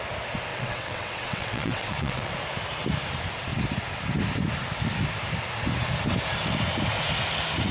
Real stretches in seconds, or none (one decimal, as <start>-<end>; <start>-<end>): 0.0-0.5; 2.3-7.7